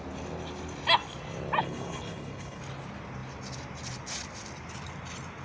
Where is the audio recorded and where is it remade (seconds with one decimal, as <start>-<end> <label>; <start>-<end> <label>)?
0.0-1.6 recorded; 1.6-2.6 remade; 2.6-5.4 recorded